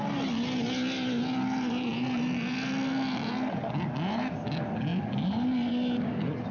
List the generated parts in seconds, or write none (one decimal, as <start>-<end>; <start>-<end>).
none